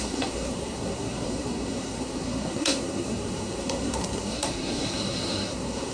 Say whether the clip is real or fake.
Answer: fake